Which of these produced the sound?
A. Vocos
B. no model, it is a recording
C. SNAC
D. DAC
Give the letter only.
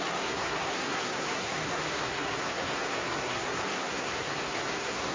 C